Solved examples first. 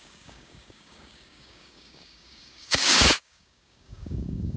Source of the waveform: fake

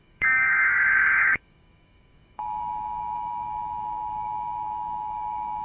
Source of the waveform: fake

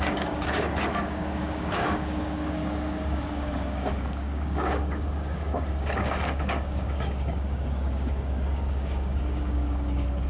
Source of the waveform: fake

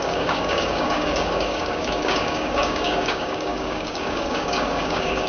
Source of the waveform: fake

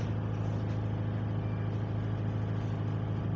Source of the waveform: real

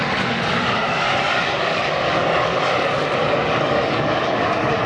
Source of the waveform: fake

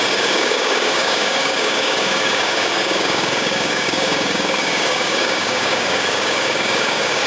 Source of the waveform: fake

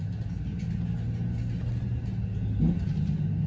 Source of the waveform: real